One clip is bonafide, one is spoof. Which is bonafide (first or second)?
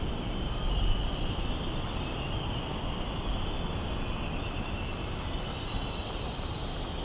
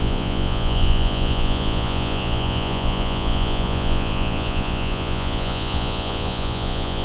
first